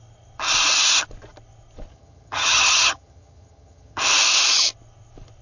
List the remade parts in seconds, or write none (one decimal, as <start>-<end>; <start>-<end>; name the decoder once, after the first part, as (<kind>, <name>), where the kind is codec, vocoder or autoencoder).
1.9-4.0 (vocoder, HiFi-GAN)